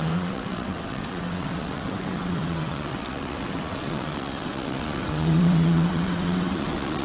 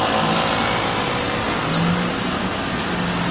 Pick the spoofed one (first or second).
first